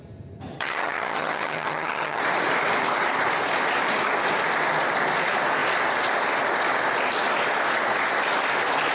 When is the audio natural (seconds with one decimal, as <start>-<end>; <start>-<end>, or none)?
0.0-0.5; 2.2-8.9